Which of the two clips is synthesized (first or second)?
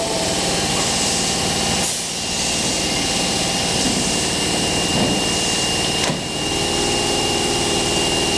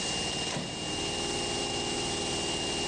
first